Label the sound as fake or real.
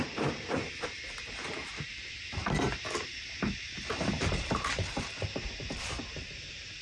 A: fake